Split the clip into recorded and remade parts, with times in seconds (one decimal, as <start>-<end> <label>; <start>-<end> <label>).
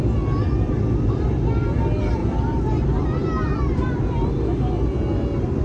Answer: 0.0-5.6 recorded